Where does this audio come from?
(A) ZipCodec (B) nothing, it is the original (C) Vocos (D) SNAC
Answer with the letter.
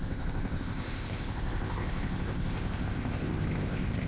A